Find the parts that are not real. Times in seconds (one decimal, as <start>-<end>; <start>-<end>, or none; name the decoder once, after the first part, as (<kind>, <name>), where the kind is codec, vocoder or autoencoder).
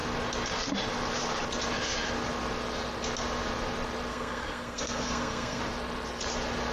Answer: 4.1-5.6 (codec, SNAC)